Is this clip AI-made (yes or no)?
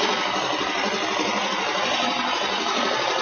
no